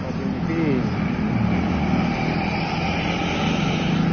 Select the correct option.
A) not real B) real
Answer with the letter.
B